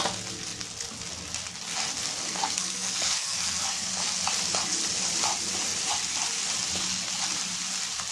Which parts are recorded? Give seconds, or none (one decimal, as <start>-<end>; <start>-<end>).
0.0-2.3; 3.9-8.1